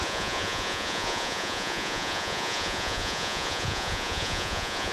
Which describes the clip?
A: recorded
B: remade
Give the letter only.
B